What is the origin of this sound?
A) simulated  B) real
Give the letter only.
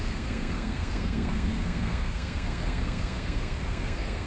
A